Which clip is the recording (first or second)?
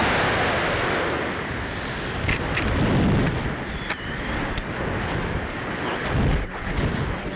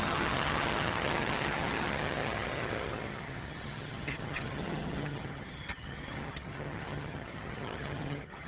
first